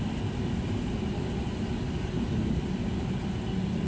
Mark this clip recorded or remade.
recorded